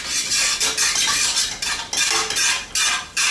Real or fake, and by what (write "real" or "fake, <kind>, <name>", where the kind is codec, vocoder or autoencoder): real